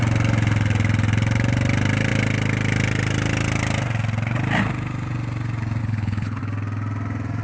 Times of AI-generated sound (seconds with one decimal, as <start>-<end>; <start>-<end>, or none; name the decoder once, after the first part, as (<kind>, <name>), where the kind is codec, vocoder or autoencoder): 5.8-6.4 (codec, HILCodec)